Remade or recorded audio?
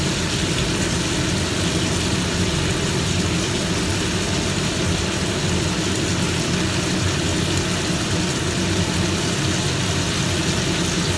recorded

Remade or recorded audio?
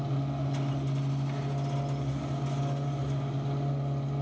recorded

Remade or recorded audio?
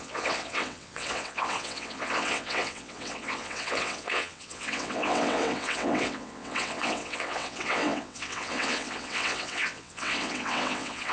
remade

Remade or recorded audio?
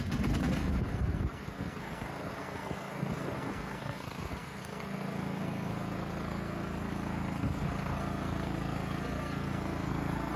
remade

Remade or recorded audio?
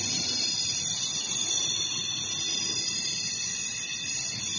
recorded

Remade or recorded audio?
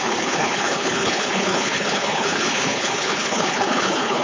remade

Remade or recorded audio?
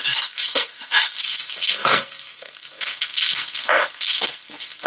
remade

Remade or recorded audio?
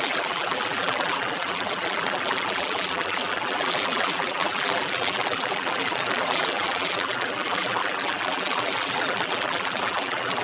remade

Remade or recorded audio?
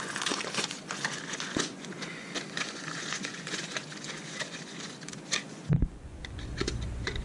remade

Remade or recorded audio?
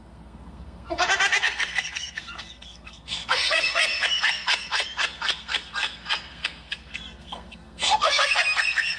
remade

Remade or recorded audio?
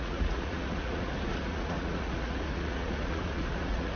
remade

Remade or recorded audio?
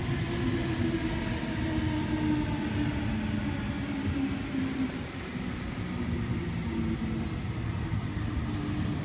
recorded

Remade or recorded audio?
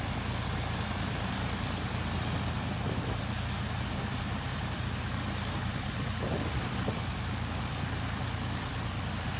remade